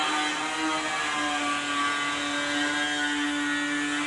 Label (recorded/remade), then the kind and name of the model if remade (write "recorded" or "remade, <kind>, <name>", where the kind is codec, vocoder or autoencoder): recorded